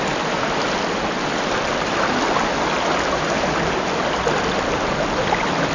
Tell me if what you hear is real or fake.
real